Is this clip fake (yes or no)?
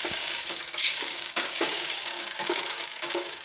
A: yes